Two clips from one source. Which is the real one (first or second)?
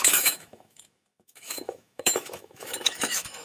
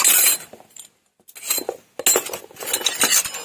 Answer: second